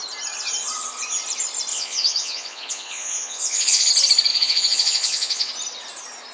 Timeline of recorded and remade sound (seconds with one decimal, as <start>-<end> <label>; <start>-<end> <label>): 0.0-1.7 recorded; 1.7-3.9 remade; 3.9-4.3 recorded; 4.3-5.5 remade; 5.5-6.3 recorded